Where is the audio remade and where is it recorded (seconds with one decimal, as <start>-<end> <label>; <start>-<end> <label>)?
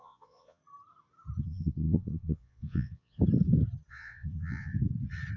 0.0-0.6 remade; 0.6-1.4 recorded; 1.4-3.2 remade; 3.2-3.9 recorded; 3.9-4.7 remade; 4.7-5.4 recorded